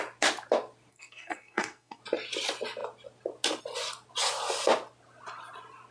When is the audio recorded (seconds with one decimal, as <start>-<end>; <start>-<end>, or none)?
0.0-0.9; 2.0-5.9